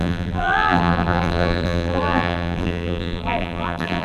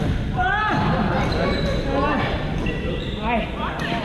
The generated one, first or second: first